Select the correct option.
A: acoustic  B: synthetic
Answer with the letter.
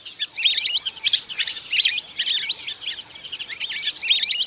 A